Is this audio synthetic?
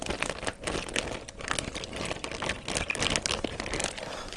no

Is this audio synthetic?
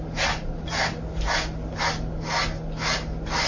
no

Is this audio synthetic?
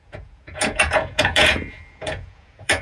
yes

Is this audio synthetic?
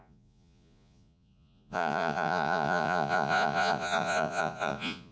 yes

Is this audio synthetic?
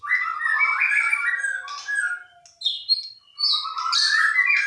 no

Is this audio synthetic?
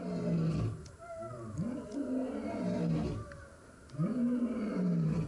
no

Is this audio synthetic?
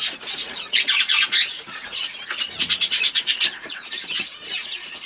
yes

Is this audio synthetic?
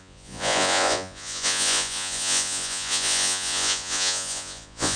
yes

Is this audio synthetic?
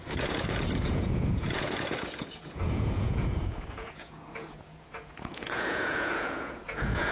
yes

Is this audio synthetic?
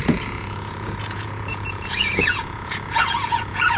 yes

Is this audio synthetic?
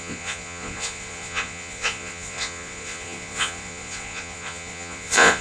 yes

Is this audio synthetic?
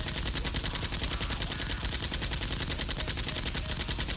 no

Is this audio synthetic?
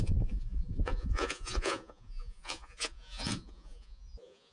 yes